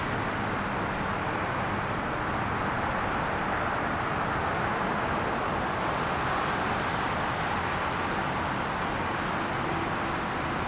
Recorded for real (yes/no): yes